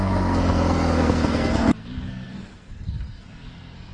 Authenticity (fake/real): fake